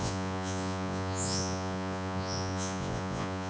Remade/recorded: remade